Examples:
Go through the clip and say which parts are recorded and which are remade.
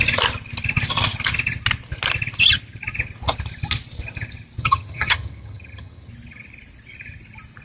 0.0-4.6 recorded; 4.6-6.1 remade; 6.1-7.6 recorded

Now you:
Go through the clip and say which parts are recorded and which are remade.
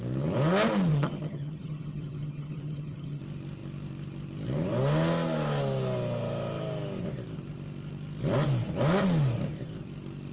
0.0-0.9 recorded; 0.9-3.2 remade; 3.2-10.3 recorded